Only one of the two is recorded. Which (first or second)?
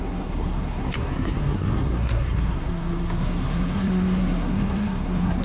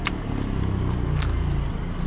second